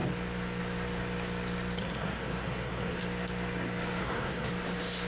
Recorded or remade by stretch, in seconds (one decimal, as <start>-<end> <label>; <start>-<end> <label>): 0.0-1.8 recorded; 1.8-3.0 remade; 3.0-4.0 recorded; 4.0-4.5 remade; 4.5-5.1 recorded